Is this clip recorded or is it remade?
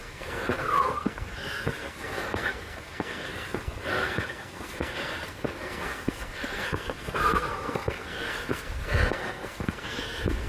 remade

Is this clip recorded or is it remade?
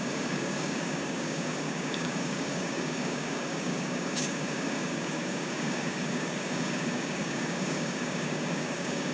remade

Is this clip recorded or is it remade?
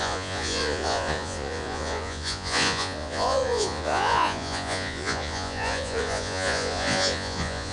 remade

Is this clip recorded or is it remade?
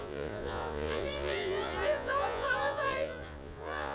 remade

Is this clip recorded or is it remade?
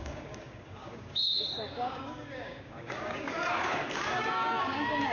remade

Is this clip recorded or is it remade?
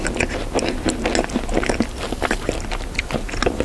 recorded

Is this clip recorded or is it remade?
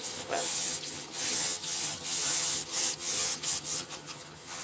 remade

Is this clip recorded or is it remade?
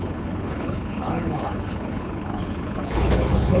remade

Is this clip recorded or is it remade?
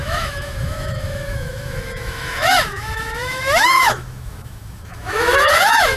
remade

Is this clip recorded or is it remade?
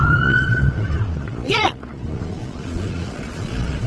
remade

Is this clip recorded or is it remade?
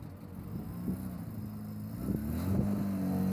recorded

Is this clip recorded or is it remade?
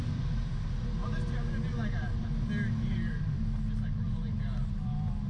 recorded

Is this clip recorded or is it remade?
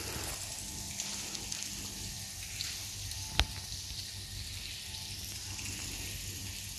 recorded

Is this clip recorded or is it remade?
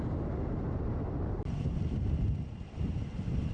recorded